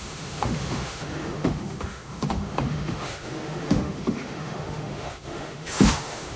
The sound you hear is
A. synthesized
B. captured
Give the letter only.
A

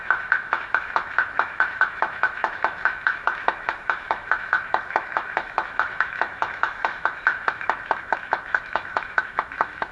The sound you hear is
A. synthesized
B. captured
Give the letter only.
A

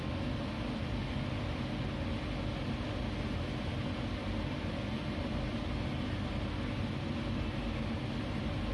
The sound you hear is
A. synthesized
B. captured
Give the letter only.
B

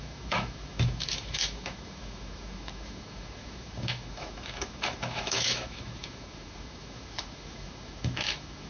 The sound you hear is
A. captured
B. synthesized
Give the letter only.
B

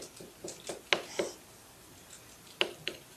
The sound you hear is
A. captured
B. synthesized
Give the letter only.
A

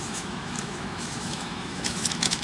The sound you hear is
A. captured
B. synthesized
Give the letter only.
B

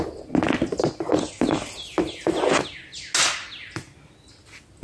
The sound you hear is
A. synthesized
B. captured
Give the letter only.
B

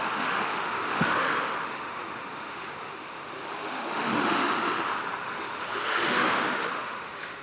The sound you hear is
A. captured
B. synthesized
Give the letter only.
B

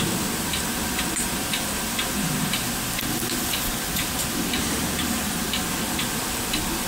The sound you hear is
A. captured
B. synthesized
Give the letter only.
A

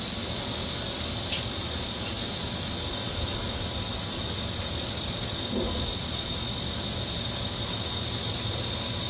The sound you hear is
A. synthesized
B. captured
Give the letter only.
B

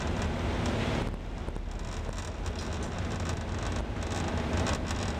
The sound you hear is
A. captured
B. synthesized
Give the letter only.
A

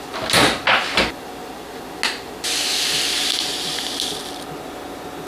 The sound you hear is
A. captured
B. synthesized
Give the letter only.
A